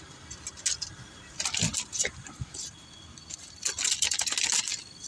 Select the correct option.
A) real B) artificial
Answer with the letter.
A